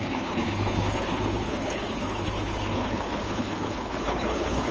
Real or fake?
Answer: fake